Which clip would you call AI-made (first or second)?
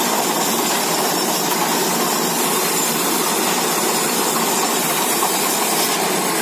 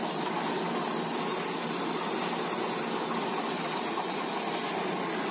first